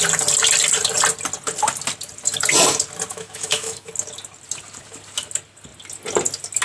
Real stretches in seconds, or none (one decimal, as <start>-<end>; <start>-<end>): 0.0-3.1; 3.9-6.6